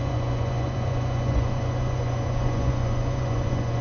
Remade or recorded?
remade